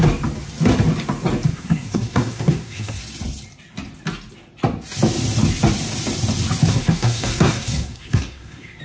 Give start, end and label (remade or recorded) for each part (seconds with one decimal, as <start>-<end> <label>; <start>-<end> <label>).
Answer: 0.0-1.5 recorded; 1.5-3.0 remade; 3.0-6.7 recorded; 6.7-8.8 remade